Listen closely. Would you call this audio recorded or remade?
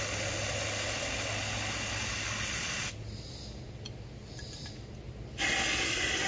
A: recorded